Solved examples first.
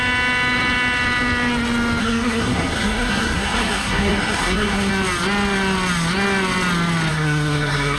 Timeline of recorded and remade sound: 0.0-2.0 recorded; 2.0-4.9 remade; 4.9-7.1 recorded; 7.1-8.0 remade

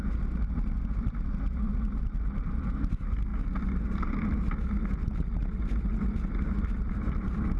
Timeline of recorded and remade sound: 0.0-7.6 recorded

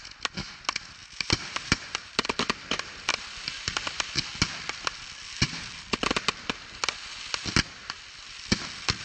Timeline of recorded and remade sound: 0.0-1.0 recorded; 1.0-3.2 remade; 3.2-9.0 recorded

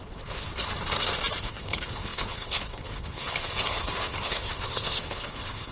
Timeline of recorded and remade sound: 0.0-0.5 remade; 0.5-1.4 recorded; 1.4-5.7 remade

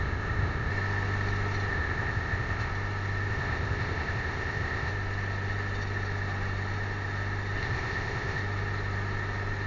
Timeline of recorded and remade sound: 0.0-0.7 remade; 0.7-1.7 recorded; 1.7-2.7 remade; 2.7-3.3 recorded; 3.3-4.9 remade; 4.9-7.6 recorded; 7.6-8.4 remade; 8.4-9.7 recorded

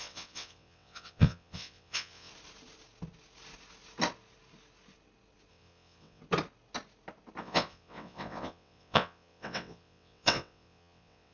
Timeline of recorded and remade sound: 0.0-2.3 remade; 2.3-5.5 recorded; 5.5-6.2 remade; 6.2-7.4 recorded; 7.4-11.3 remade

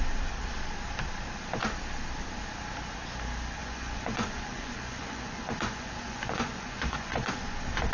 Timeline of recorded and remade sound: 0.0-3.6 recorded; 3.6-7.3 remade; 7.3-7.9 recorded